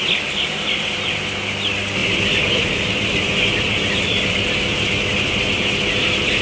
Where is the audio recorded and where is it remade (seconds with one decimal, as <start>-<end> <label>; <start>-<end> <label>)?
0.0-6.4 recorded